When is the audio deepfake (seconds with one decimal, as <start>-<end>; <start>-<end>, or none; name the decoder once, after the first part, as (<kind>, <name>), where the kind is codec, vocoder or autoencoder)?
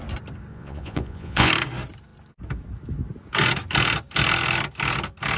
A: 0.5-1.5 (vocoder, Vocos)